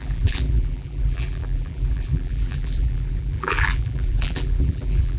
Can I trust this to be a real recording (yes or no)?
no